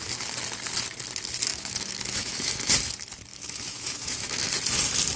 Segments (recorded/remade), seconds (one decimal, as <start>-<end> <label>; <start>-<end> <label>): 0.0-1.5 recorded; 1.5-2.7 remade; 2.7-3.3 recorded; 3.3-4.5 remade; 4.5-5.2 recorded